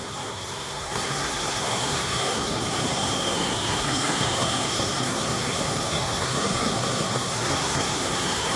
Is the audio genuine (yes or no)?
no